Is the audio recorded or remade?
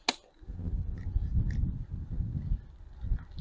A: recorded